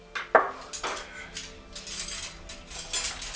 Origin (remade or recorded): recorded